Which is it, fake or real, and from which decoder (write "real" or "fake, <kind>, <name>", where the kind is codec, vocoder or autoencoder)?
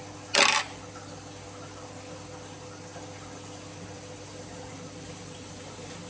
real